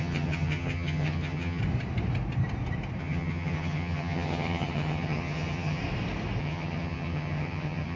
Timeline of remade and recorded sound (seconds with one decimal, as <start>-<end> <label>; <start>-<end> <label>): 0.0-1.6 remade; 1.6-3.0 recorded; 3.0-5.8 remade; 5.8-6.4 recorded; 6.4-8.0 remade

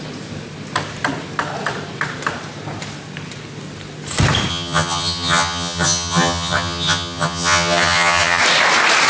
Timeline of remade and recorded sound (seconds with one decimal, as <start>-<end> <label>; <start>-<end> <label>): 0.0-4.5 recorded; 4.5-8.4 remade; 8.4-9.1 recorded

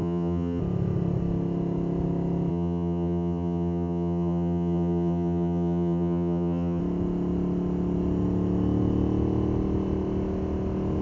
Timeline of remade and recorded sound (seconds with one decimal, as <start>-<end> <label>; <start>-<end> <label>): 0.0-0.6 remade; 0.6-2.5 recorded; 2.5-6.8 remade; 6.8-11.0 recorded

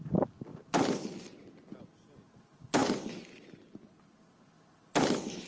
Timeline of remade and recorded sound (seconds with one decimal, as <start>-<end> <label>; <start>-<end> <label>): 0.0-5.5 recorded

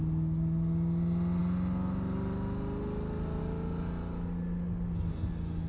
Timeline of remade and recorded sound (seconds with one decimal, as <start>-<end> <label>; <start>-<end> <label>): 0.0-5.7 recorded

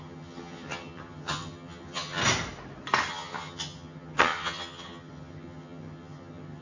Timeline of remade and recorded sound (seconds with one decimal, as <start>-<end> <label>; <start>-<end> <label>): 0.0-2.2 remade; 2.2-3.1 recorded; 3.1-6.6 remade